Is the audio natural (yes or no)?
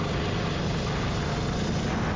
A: yes